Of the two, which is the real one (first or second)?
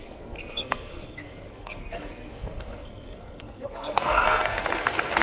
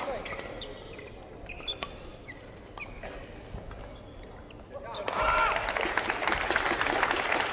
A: second